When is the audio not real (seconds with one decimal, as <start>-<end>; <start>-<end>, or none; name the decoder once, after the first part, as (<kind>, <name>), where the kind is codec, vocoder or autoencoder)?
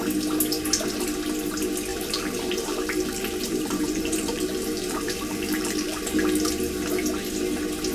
1.9-6.5 (vocoder, BigVGAN v2)